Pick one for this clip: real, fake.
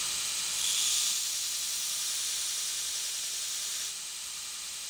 real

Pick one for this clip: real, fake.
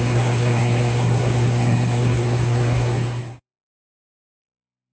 fake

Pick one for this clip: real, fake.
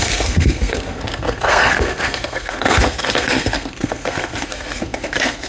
fake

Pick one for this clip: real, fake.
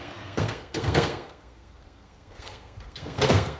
fake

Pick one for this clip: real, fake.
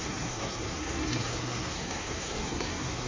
fake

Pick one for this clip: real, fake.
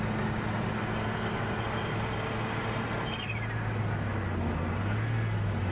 real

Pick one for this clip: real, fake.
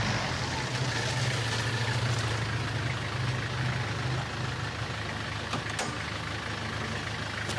real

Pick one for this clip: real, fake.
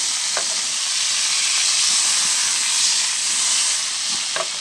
real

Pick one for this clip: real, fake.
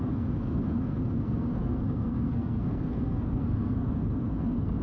fake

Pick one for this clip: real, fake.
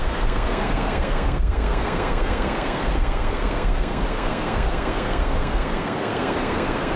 fake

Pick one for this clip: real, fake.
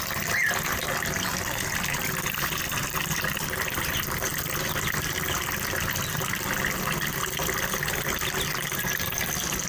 real